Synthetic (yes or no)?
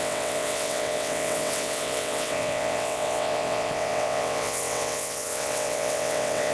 yes